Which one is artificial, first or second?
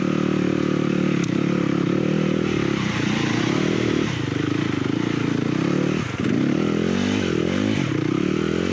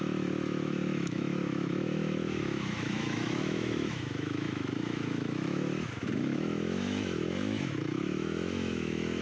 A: second